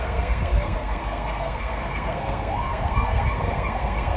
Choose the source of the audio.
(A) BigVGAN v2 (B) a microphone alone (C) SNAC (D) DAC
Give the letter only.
C